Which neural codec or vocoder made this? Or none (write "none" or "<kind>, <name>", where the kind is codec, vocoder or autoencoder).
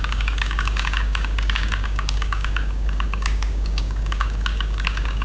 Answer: codec, DAC